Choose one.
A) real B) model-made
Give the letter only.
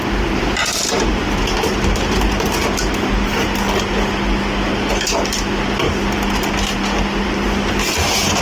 A